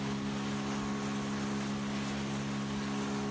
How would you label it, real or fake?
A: real